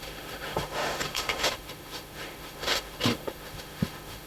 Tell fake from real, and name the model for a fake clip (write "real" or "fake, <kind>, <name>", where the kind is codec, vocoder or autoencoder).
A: fake, autoencoder, DAC-VAE